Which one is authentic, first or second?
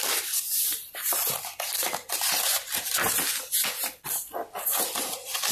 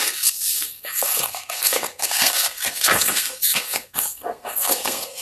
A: first